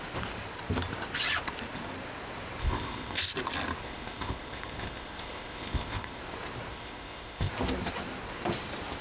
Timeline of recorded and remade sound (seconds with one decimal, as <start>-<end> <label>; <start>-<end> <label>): 0.0-2.6 recorded; 2.6-3.2 remade; 3.2-3.8 recorded; 3.8-6.2 remade; 6.2-6.7 recorded; 6.7-7.5 remade; 7.5-9.0 recorded

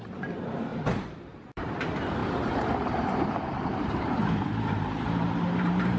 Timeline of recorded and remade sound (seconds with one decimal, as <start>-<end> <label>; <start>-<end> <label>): 0.0-0.7 recorded; 0.7-1.7 remade; 1.7-2.2 recorded; 2.2-6.0 remade

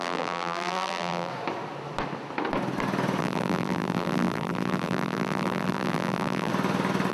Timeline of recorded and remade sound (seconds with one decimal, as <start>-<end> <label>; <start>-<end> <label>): 0.0-1.3 remade; 1.3-3.2 recorded; 3.2-6.5 remade; 6.5-7.1 recorded

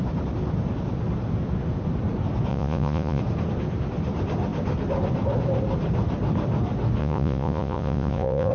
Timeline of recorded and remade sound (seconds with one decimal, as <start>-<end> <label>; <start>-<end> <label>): 0.0-2.5 recorded; 2.5-3.2 remade; 3.2-7.0 recorded; 7.0-8.5 remade

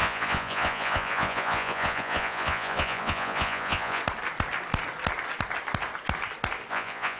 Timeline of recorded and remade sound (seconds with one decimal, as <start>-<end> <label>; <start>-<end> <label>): 0.0-4.0 remade; 4.0-6.7 recorded; 6.7-7.2 remade

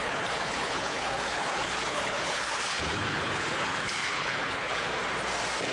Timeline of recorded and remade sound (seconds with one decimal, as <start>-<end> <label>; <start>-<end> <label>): 0.0-4.9 remade; 4.9-5.7 recorded

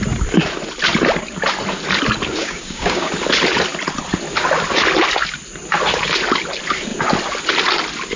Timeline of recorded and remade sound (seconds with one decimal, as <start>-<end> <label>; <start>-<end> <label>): 0.0-2.4 recorded; 2.4-3.1 remade; 3.1-8.2 recorded

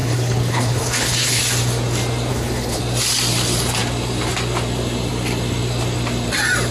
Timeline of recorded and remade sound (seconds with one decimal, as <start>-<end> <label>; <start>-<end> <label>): 0.0-1.4 remade; 1.4-2.3 recorded; 2.3-2.8 remade; 2.8-6.7 recorded